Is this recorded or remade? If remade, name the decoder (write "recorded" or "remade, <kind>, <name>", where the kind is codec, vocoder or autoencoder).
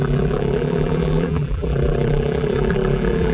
remade, vocoder, BigVGAN v2